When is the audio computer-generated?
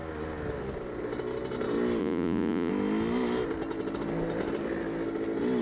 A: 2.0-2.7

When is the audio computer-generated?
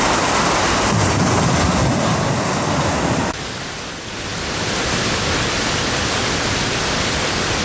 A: none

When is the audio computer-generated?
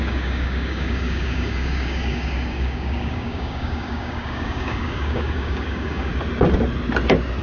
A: 0.0-6.1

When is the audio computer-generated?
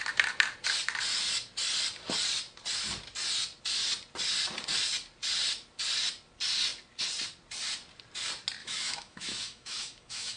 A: 8.6-10.4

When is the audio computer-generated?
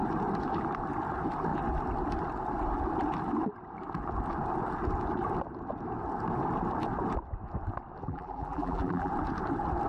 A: 8.0-9.1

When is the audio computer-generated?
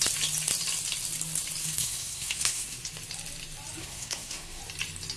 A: 1.6-2.8; 3.8-4.6